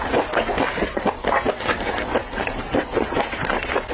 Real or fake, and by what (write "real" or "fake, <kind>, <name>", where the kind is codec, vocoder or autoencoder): real